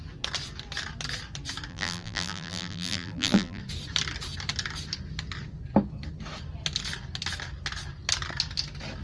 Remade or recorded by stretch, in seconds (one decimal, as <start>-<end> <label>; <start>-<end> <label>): 0.0-1.7 recorded; 1.7-3.6 remade; 3.6-9.0 recorded